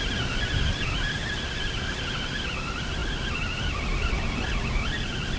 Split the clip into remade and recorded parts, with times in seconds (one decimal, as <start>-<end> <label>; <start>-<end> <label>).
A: 0.0-5.4 recorded